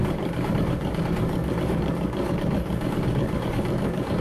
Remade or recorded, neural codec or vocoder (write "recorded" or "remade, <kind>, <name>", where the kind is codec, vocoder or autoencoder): remade, codec, DAC